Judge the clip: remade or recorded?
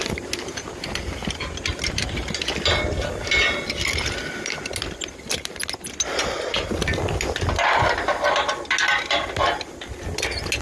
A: recorded